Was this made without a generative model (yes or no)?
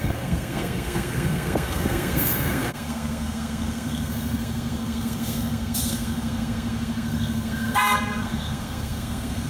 no